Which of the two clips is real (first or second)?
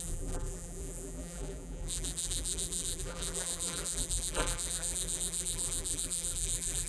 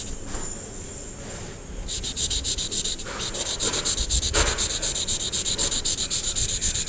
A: second